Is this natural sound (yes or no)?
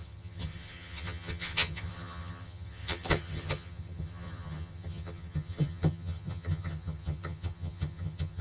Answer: no